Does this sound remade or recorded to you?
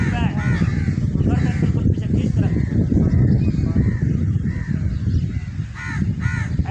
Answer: recorded